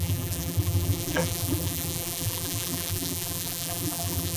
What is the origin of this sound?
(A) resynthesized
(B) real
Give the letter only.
A